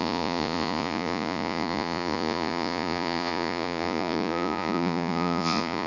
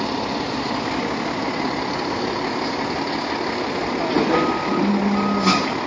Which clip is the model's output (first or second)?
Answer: first